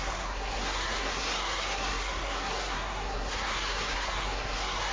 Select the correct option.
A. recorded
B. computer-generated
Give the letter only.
B